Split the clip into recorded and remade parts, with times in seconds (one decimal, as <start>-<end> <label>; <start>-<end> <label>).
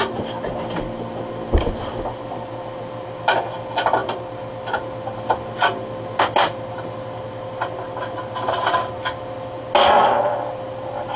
0.0-11.2 recorded